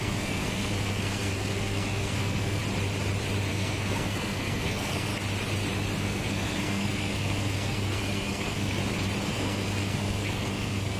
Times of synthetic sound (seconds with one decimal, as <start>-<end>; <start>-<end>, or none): 0.0-2.6; 3.5-5.1; 6.0-8.8; 9.3-11.0